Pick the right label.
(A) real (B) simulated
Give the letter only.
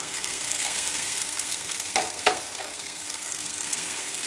B